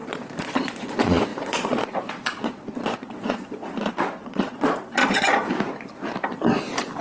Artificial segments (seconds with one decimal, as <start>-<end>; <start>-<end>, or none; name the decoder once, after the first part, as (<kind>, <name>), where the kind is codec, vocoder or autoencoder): 0.0-5.0 (vocoder, Vocos)